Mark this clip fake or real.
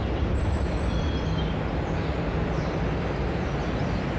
real